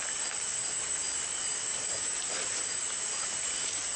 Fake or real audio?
fake